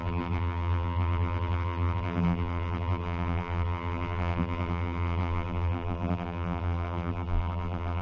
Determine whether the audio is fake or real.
fake